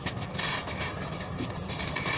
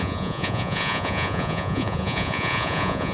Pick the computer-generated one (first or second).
second